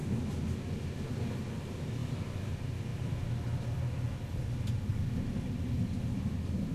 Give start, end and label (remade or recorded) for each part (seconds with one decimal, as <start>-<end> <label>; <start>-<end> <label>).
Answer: 0.0-2.0 recorded; 2.0-2.5 remade; 2.5-2.9 recorded; 2.9-3.8 remade; 3.8-4.9 recorded; 4.9-6.7 remade